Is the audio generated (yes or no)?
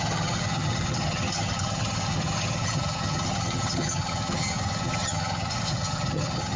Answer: yes